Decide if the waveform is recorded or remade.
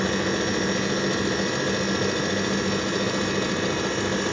recorded